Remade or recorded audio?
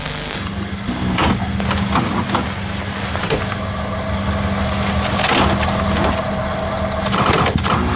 recorded